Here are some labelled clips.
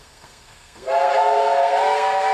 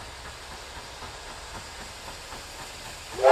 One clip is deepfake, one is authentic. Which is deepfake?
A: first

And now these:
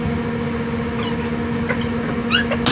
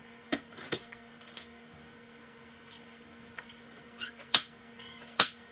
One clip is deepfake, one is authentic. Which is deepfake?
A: second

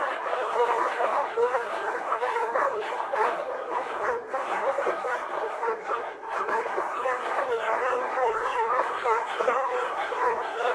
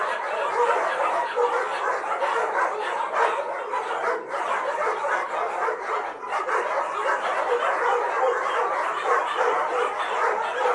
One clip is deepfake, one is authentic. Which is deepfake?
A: first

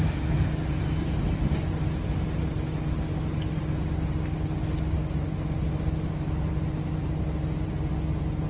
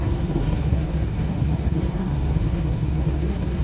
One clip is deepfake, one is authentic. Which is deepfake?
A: second